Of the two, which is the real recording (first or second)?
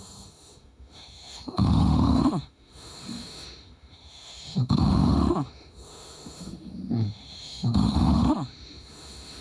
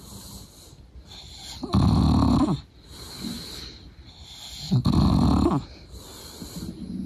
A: second